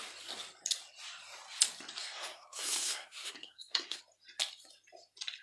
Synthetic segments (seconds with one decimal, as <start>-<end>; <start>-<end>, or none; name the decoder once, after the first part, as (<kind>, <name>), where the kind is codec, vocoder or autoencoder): 2.0-4.0 (codec, SNAC)